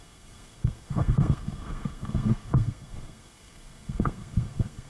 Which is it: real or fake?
fake